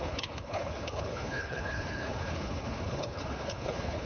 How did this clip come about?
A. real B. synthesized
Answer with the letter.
B